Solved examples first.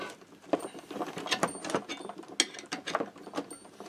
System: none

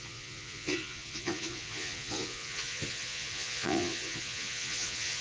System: vocoder, Vocos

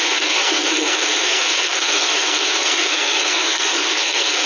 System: codec, SNAC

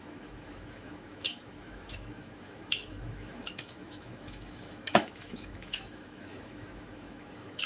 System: autoencoder, DAC-VAE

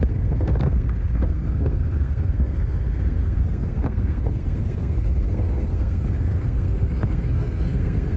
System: codec, SNAC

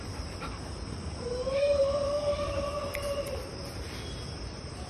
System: vocoder, BigVGAN v2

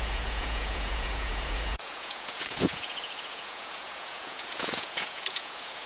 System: vocoder, Vocos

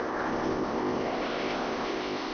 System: codec, ZipCodec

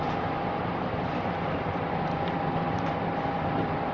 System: none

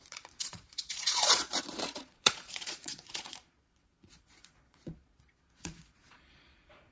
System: vocoder, Vocos